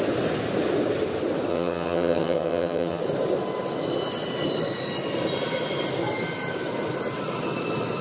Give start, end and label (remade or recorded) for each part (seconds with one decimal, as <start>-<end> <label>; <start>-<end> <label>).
0.0-1.5 recorded; 1.5-3.0 remade; 3.0-8.0 recorded